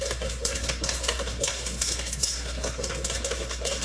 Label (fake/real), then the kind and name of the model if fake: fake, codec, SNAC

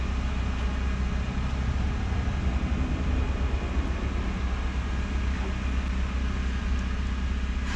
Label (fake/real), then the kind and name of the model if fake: real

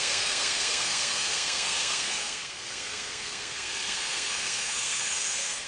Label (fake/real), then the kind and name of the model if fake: fake, codec, SNAC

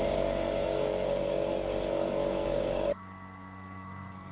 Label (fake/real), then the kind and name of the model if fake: fake, codec, SNAC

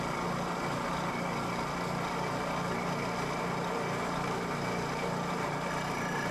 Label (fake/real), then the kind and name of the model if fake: real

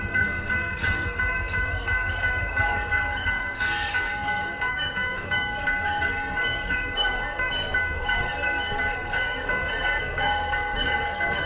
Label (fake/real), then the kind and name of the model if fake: fake, codec, SNAC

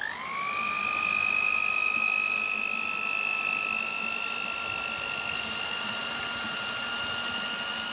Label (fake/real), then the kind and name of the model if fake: real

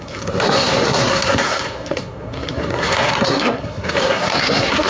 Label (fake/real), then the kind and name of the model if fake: fake, codec, SNAC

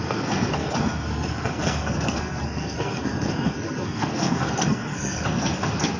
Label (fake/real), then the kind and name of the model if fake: fake, codec, SNAC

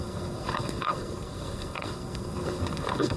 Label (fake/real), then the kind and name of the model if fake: fake, codec, SNAC